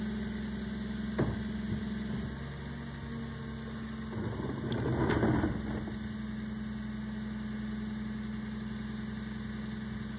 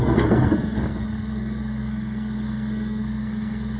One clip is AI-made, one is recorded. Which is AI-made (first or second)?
second